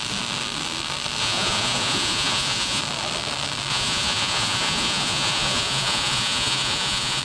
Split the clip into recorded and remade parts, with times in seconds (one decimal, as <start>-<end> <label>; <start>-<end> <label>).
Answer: 0.0-1.2 recorded; 1.2-2.8 remade; 2.8-3.7 recorded; 3.7-7.2 remade